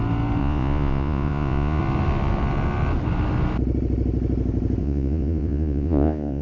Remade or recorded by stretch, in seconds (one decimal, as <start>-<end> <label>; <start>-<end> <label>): 0.0-0.4 recorded; 0.4-1.8 remade; 1.8-4.8 recorded; 4.8-6.4 remade